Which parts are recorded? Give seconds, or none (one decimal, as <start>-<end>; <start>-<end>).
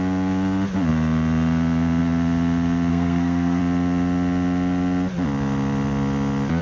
0.0-2.9; 3.6-6.6